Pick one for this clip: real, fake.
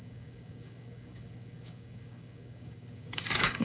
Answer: fake